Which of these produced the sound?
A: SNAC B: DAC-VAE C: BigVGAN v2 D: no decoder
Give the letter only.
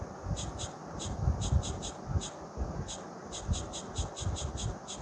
D